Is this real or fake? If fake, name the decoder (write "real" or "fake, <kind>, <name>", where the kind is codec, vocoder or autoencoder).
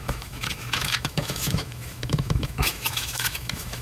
fake, autoencoder, DAC-VAE